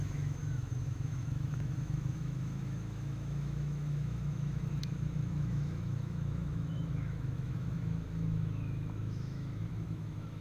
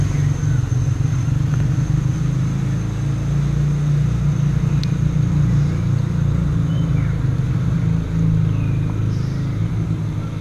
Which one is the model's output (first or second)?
first